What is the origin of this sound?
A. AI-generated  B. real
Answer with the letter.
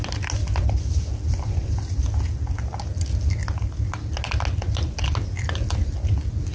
B